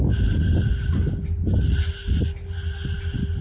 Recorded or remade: recorded